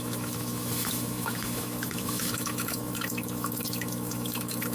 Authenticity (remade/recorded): remade